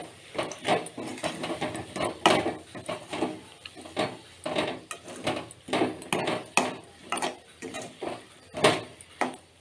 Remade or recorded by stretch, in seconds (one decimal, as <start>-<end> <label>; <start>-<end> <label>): 0.0-7.0 recorded; 7.0-7.9 remade; 7.9-9.6 recorded